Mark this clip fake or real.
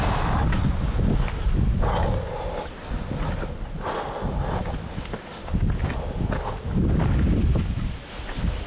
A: real